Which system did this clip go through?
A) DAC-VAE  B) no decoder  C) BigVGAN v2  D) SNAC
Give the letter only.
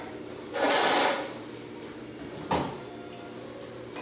B